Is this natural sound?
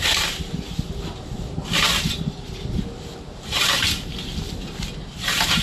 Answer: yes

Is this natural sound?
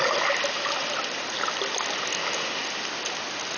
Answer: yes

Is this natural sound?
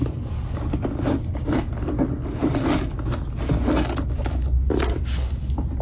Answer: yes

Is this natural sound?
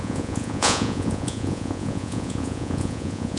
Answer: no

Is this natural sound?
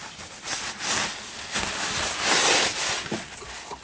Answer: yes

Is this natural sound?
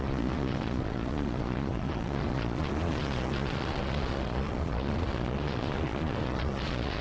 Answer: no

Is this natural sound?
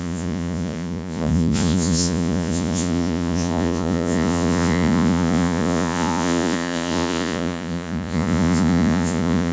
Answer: no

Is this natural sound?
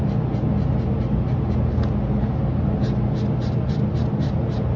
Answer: yes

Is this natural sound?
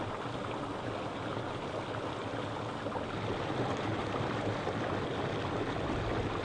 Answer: yes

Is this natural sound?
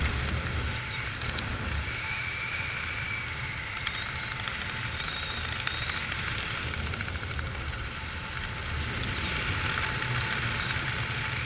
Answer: yes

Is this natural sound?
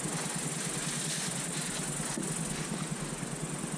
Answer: yes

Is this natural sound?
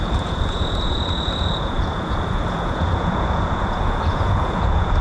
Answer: no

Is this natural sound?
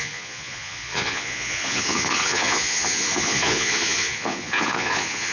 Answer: no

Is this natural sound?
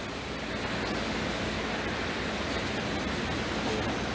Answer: yes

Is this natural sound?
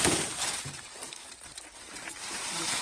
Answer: yes